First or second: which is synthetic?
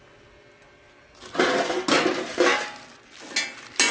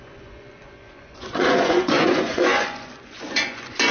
second